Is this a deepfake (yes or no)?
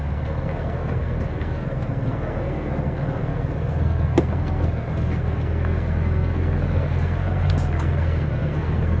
yes